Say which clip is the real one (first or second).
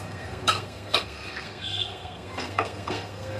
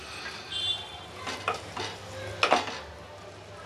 second